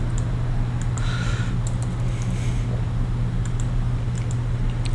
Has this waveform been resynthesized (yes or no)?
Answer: no